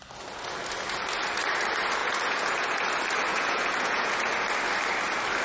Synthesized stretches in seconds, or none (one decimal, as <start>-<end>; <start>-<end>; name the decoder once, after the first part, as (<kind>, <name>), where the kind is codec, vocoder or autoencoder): 2.0-2.8 (vocoder, Vocos); 3.3-4.3